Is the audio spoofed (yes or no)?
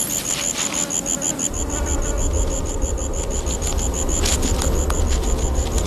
no